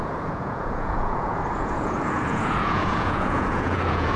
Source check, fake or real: fake